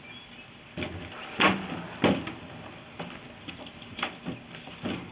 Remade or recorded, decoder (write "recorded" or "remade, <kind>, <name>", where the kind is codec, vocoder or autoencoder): recorded